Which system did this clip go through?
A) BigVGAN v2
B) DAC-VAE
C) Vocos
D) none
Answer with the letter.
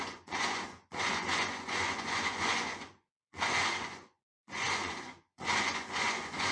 C